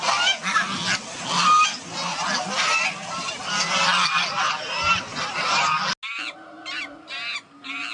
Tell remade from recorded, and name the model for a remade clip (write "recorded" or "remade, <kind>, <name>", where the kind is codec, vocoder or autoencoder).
recorded